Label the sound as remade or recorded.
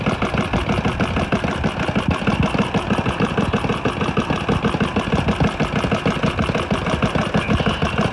recorded